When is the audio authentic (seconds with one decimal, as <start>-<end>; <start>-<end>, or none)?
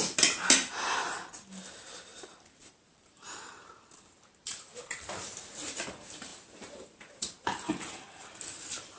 0.0-2.1; 5.1-6.3; 8.3-9.0